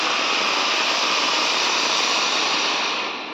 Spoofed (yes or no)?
yes